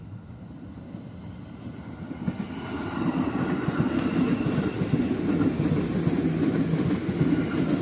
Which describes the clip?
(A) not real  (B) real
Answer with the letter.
B